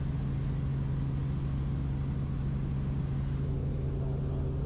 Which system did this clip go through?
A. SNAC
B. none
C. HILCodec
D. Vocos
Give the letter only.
B